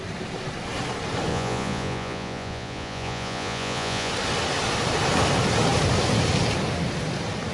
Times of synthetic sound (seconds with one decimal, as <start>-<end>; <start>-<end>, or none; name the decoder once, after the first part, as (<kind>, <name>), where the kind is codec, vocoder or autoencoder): 1.3-4.1 (vocoder, Vocos)